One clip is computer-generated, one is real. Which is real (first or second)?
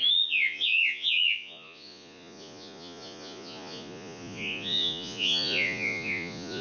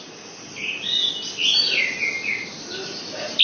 second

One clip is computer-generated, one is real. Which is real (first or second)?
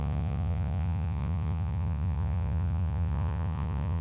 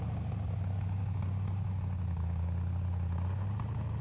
second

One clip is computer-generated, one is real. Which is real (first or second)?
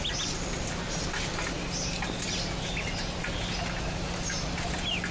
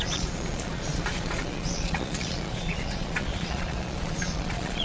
first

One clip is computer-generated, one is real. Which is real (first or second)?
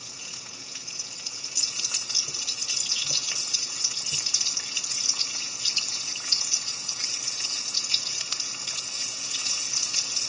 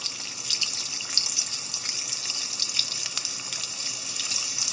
second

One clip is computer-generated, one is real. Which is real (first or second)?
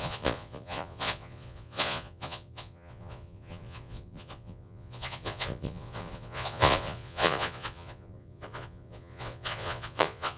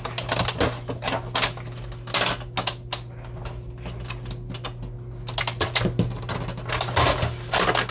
second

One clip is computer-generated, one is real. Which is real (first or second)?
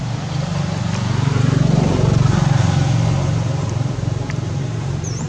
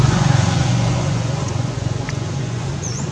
first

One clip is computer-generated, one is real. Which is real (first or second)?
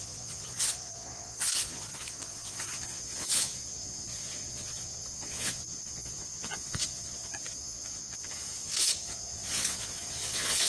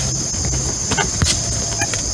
second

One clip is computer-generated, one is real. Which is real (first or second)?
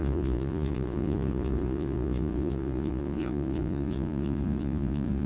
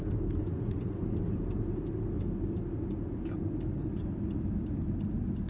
second